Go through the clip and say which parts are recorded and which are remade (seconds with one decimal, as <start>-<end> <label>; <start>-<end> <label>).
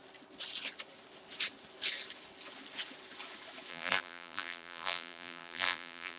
0.0-3.7 recorded; 3.7-6.2 remade